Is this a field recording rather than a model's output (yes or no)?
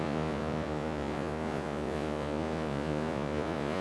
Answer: no